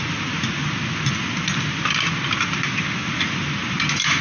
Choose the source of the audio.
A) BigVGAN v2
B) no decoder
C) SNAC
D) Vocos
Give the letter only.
B